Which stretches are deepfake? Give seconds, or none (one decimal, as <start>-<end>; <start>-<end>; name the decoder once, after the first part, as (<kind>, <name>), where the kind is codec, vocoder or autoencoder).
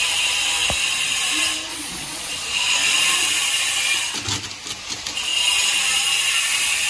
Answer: 1.7-3.0 (vocoder, Vocos)